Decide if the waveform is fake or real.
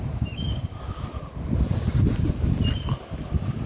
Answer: real